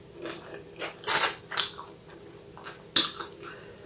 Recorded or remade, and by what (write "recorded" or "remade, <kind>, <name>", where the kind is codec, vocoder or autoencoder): recorded